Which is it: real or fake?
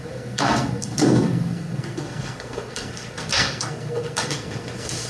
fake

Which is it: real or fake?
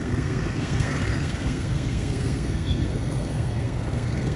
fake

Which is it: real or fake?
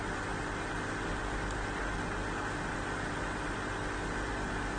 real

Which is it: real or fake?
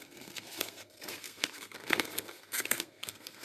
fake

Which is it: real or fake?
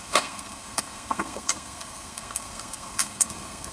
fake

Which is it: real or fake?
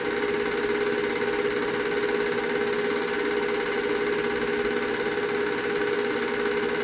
real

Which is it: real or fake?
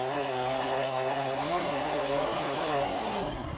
fake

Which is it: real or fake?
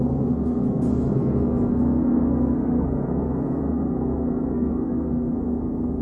fake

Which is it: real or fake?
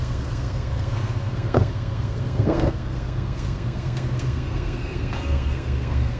fake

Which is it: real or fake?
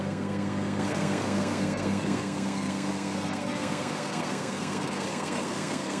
fake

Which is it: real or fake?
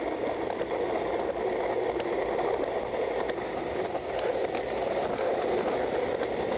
real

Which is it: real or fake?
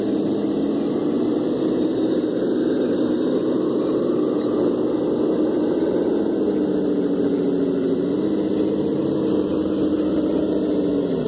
real